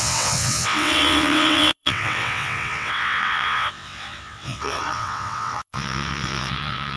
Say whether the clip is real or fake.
fake